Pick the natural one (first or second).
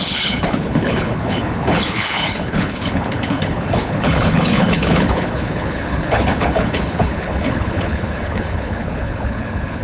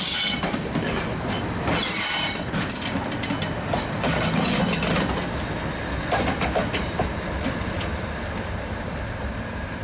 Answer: second